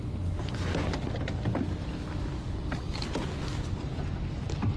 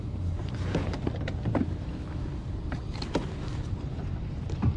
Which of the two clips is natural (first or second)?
first